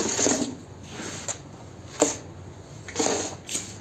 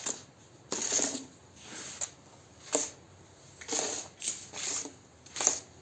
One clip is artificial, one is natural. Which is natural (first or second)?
second